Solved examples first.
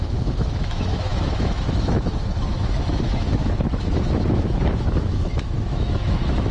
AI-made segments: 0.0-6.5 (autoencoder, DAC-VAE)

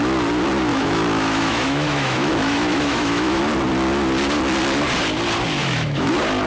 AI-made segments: 0.7-3.4 (autoencoder, DAC-VAE); 5.6-6.1

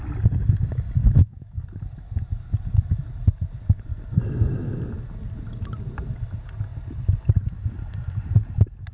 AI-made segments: 1.0-1.8 (autoencoder, DAC-VAE)

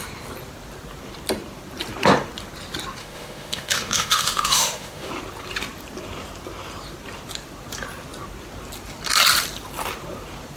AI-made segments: 3.0-5.1 (autoencoder, DAC-VAE)